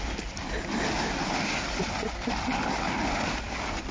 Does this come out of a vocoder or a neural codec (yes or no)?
no